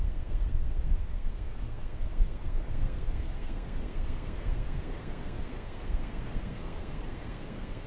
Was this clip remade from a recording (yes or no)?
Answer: yes